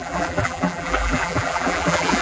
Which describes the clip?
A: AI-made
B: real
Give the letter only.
A